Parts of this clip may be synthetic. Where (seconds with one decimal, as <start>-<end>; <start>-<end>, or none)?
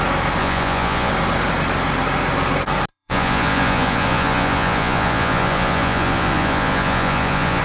0.4-1.1; 2.9-7.6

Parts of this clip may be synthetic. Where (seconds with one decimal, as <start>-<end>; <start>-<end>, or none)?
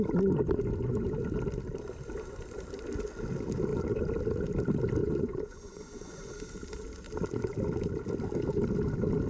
5.0-6.3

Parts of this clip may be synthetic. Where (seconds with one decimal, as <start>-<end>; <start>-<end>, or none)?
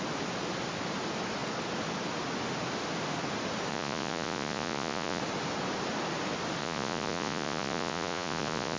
3.7-5.2; 6.6-8.8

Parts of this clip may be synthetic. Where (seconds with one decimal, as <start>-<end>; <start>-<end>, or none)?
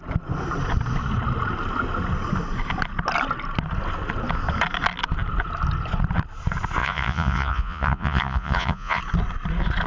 6.8-9.0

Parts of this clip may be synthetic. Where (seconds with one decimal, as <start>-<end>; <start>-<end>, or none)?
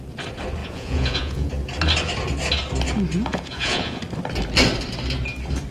0.6-1.5; 3.3-4.0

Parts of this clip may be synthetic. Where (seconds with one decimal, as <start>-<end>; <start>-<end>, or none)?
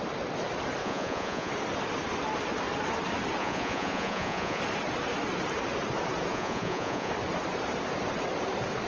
0.8-1.5; 3.4-4.6; 6.3-7.1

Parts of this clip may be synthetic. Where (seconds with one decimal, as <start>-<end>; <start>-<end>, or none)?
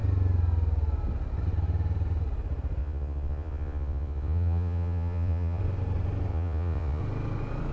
2.8-5.6; 6.3-7.0